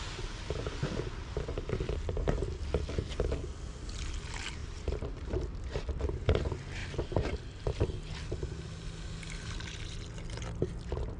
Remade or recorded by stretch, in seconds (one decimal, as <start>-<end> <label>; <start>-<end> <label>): 0.0-4.6 recorded; 4.6-5.9 remade; 5.9-11.2 recorded